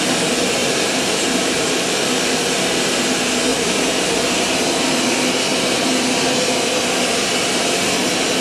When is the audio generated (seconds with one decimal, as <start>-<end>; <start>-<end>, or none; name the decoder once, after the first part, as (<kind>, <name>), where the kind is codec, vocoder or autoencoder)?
0.6-1.7 (vocoder, BigVGAN v2); 3.5-4.6; 5.5-6.0